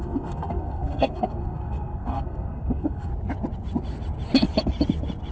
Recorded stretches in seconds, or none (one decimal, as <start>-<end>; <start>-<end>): 3.1-5.3